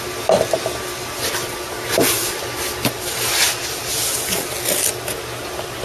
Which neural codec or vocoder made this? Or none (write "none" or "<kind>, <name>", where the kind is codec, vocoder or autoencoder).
none